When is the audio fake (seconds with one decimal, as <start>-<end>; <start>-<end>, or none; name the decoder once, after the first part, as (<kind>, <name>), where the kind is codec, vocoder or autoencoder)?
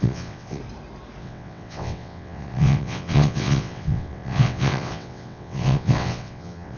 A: 0.0-0.6 (vocoder, WaveNeXt); 1.2-6.8